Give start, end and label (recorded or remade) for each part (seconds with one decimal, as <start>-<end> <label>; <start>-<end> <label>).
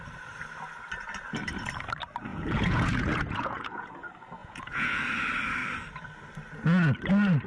0.0-2.3 recorded; 2.3-3.9 remade; 3.9-4.4 recorded; 4.4-5.0 remade; 5.0-7.5 recorded